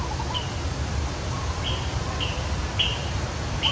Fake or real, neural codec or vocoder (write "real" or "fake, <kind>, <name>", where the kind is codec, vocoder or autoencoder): real